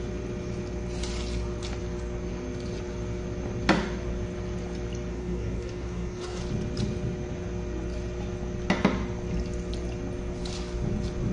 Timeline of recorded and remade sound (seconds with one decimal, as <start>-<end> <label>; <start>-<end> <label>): 0.0-5.1 recorded; 5.1-6.4 remade; 6.4-11.3 recorded